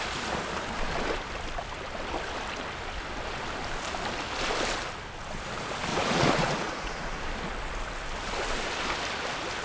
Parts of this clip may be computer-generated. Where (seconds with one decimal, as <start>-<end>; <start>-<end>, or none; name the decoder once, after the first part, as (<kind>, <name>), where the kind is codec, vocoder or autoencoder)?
5.9-7.2 (vocoder, Vocos)